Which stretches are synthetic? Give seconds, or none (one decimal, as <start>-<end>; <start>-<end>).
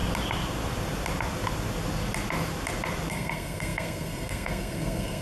3.1-5.2